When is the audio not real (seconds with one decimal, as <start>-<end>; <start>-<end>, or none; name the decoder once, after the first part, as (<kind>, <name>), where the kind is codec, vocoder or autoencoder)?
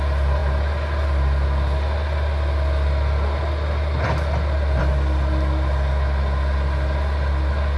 none